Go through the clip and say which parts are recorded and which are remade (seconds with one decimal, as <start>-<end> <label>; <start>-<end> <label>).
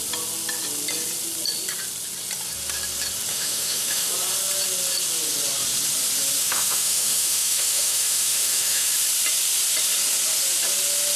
0.0-3.3 recorded; 3.3-4.1 remade; 4.1-6.4 recorded; 6.4-8.9 remade; 8.9-11.2 recorded